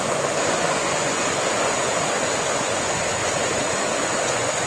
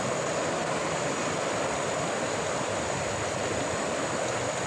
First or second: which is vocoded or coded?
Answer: first